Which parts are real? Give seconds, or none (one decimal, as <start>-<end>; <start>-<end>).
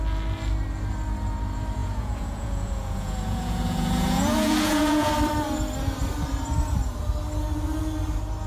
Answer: 0.0-1.8; 5.1-8.5